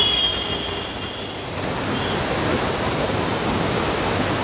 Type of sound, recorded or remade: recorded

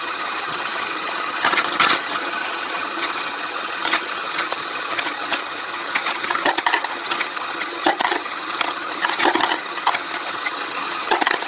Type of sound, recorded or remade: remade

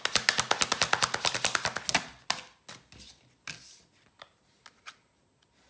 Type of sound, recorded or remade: recorded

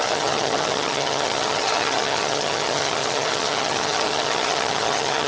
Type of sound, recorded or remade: remade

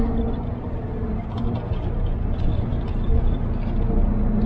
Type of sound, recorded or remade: recorded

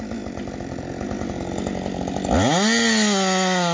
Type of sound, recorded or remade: recorded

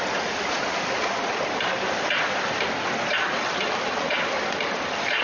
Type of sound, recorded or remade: recorded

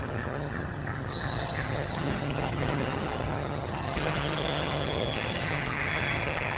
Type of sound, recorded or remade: remade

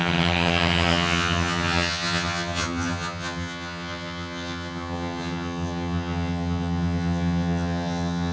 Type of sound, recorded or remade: remade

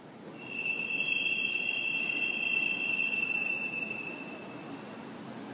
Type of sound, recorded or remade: recorded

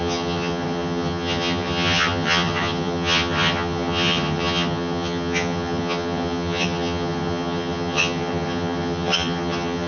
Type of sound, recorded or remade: remade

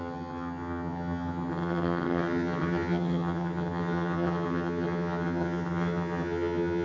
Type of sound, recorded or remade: remade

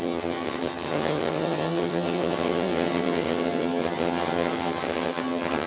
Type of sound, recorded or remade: remade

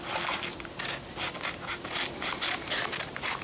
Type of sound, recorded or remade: recorded